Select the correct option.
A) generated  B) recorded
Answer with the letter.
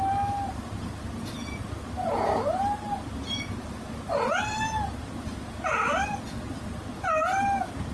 B